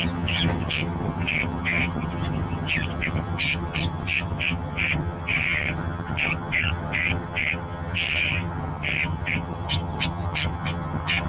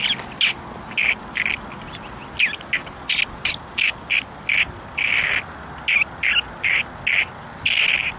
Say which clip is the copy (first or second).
first